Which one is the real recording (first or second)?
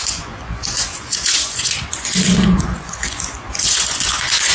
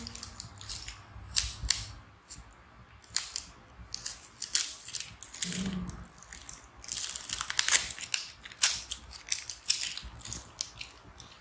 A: second